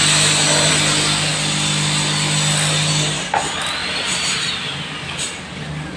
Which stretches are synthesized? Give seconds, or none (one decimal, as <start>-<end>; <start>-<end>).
3.8-4.5